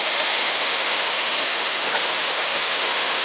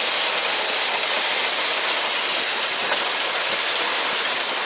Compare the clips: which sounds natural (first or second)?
second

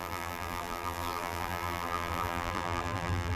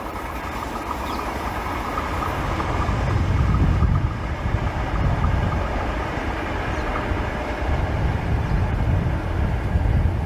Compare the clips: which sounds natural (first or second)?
second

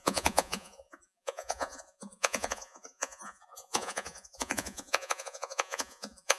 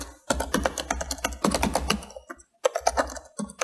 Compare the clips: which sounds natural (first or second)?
second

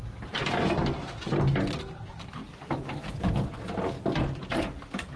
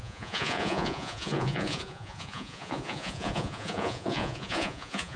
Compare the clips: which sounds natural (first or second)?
first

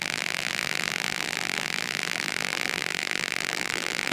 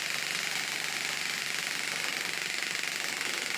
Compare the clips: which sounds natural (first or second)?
second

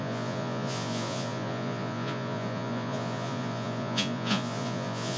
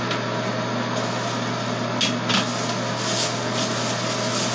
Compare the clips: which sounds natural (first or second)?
second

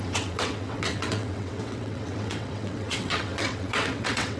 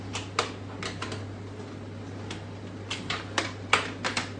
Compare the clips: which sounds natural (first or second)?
second